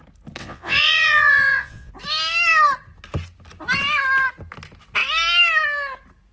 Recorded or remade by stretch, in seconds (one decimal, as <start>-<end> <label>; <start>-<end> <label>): 0.0-0.4 recorded; 0.4-1.9 remade; 1.9-6.3 recorded